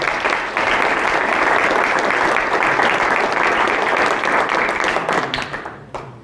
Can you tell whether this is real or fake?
real